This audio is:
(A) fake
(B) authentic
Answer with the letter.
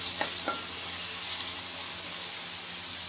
B